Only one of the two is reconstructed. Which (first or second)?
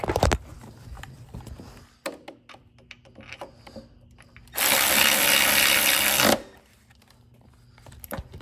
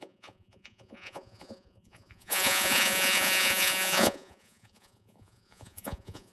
second